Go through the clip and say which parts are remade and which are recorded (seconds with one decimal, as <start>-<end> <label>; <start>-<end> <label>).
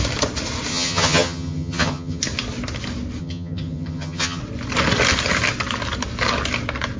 0.0-0.7 recorded; 0.7-2.2 remade; 2.2-3.2 recorded; 3.2-4.4 remade; 4.4-7.0 recorded